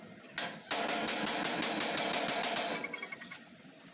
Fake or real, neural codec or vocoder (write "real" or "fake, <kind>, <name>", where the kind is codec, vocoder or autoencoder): real